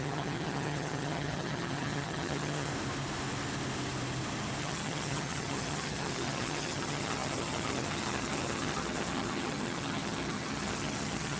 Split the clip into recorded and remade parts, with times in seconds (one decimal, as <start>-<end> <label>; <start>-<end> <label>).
0.0-2.7 remade; 2.7-4.6 recorded; 4.6-11.4 remade